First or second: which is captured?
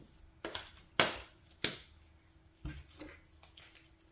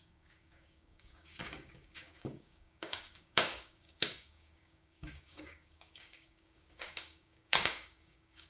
first